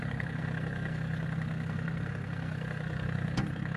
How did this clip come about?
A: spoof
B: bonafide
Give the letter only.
A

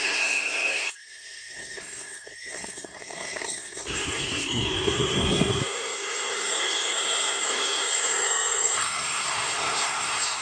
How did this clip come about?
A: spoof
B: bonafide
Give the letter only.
A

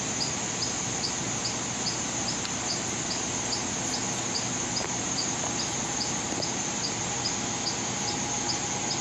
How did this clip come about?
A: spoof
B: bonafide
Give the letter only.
B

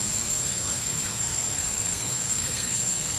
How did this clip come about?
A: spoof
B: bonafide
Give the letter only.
A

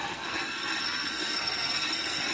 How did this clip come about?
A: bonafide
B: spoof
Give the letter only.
B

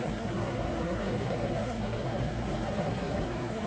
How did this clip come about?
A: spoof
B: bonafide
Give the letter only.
A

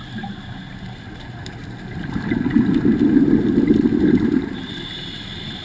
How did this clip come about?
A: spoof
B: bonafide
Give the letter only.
B